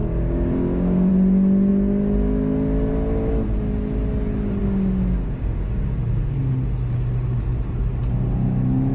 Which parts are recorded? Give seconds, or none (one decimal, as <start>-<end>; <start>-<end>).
1.1-4.6; 6.5-8.9

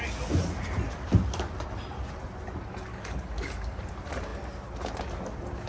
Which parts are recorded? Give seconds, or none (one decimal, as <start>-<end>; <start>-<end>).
0.0-2.9; 3.8-5.7